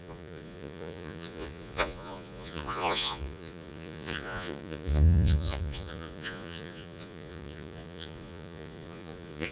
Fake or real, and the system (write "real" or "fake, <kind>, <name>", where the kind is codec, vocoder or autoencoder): fake, vocoder, Vocos